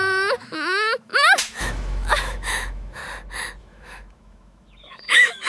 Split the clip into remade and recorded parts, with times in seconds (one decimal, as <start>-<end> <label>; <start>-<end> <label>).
0.0-3.0 remade; 3.0-3.6 recorded; 3.6-5.5 remade